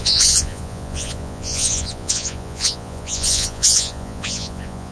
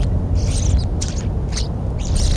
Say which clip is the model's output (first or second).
first